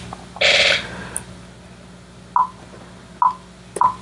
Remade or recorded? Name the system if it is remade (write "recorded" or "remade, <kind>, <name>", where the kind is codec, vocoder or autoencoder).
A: recorded